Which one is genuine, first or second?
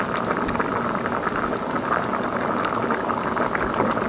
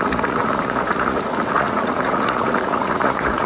first